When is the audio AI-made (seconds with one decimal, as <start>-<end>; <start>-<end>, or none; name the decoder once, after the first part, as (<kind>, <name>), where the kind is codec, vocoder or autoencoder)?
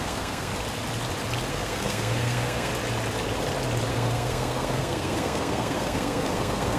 0.0-0.5 (codec, SNAC); 1.5-2.7; 3.9-6.8